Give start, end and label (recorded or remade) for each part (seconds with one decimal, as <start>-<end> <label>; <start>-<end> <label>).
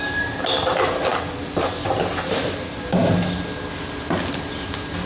0.0-5.1 recorded